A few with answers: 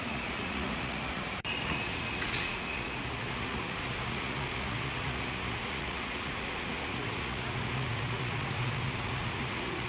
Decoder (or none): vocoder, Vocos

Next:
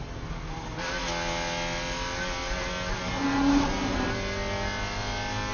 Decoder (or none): none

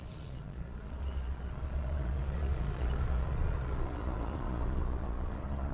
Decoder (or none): vocoder, Vocos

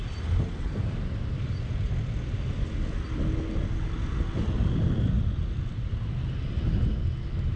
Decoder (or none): none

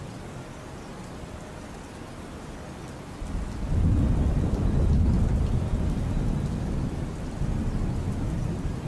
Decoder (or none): none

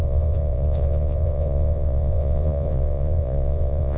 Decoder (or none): vocoder, Vocos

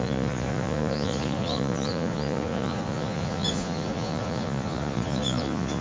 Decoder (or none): vocoder, Vocos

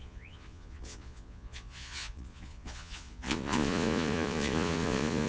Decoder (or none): vocoder, Vocos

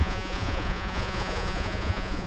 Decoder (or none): vocoder, Vocos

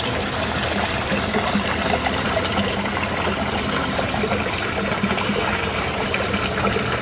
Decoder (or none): none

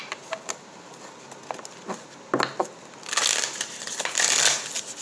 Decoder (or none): none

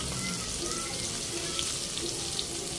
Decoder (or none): none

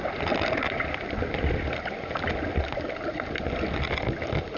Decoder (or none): none